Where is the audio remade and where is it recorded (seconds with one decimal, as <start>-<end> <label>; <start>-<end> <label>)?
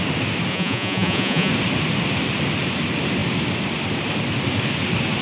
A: 0.0-0.5 recorded; 0.5-1.5 remade; 1.5-5.2 recorded